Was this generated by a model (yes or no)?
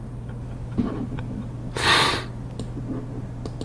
no